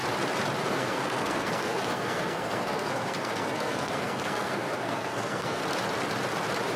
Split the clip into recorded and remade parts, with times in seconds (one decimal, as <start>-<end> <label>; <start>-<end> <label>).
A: 0.0-0.7 recorded; 0.7-5.6 remade; 5.6-6.8 recorded